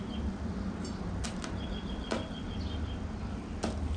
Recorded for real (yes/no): yes